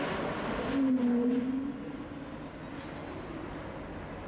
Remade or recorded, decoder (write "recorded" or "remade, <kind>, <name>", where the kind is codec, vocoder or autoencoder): recorded